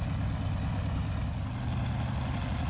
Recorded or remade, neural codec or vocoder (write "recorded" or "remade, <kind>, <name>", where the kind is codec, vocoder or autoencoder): recorded